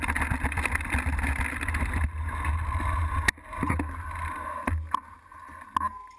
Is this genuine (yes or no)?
yes